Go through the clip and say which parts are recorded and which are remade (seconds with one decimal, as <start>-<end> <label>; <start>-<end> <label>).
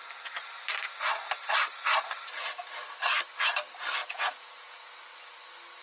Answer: 0.0-4.0 recorded; 4.0-4.9 remade; 4.9-5.8 recorded